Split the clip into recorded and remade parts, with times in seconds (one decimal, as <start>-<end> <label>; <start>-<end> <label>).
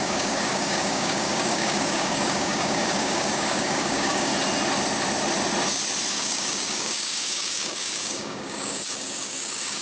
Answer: 0.0-4.3 remade; 4.3-6.1 recorded; 6.1-9.8 remade